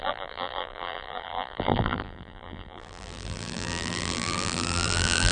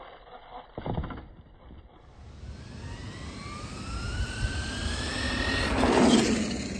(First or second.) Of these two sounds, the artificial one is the first